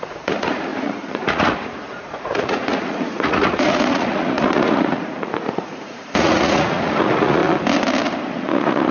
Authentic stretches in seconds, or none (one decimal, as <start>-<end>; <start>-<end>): 7.4-8.3